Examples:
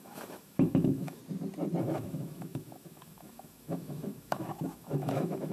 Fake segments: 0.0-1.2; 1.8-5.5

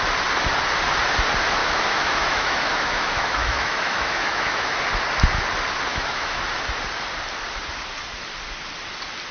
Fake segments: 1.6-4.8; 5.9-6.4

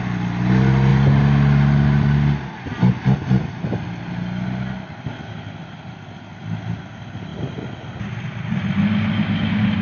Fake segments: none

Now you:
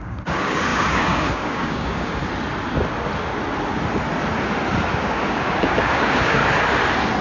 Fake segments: 0.0-2.2; 4.9-6.4

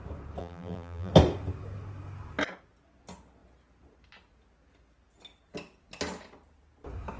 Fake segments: 0.4-1.1

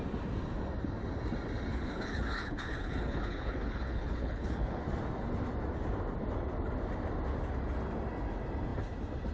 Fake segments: 1.7-4.8